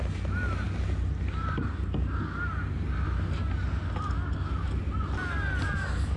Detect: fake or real real